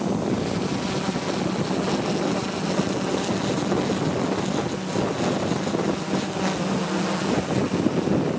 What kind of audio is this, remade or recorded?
recorded